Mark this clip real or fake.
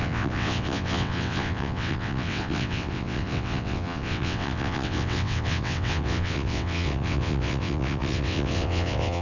fake